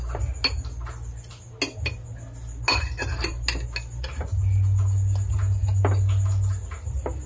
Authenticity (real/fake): real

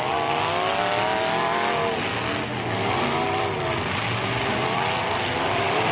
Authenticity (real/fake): real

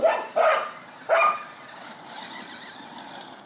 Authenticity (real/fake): real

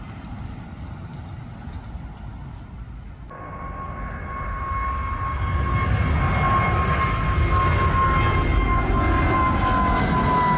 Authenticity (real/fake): real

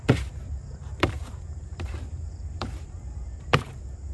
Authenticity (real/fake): fake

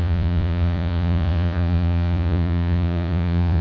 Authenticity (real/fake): fake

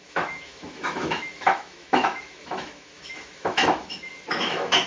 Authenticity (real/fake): fake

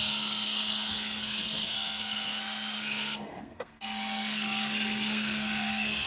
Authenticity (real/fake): fake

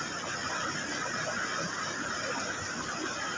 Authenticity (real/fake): real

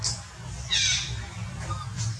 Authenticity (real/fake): real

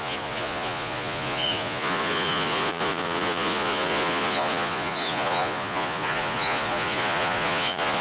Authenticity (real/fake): fake